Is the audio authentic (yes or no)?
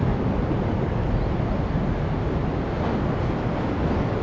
yes